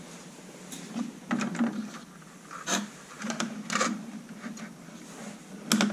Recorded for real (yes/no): yes